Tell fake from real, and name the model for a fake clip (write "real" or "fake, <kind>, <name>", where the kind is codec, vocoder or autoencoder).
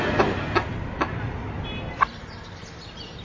fake, vocoder, BigVGAN v2